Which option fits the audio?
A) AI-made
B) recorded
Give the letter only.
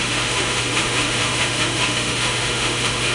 A